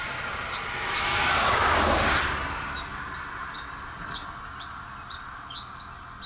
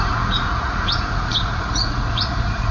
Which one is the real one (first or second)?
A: first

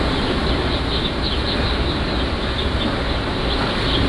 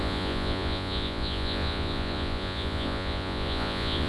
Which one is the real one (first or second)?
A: first